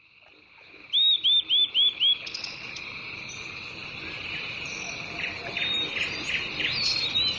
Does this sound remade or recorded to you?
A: recorded